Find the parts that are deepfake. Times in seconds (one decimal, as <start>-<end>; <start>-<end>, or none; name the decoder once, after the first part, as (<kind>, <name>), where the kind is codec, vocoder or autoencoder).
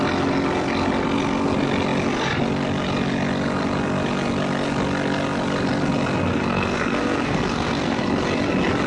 6.3-8.0 (codec, SNAC)